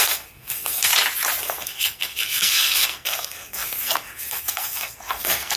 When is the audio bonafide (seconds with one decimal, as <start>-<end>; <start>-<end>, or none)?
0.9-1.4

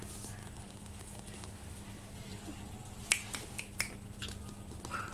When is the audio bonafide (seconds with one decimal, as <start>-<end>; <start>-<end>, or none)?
0.0-0.4; 1.5-5.1

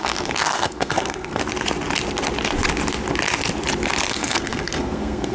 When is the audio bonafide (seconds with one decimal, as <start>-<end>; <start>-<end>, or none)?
1.4-4.1